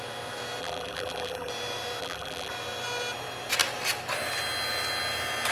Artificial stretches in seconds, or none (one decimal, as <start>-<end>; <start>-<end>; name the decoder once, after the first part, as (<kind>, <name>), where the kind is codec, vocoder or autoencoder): 0.6-1.5 (vocoder, BigVGAN v2); 2.0-2.5